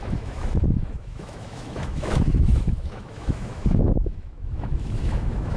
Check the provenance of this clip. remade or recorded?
remade